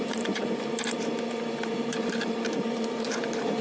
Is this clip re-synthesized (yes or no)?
yes